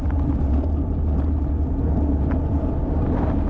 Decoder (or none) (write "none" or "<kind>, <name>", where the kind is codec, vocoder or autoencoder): none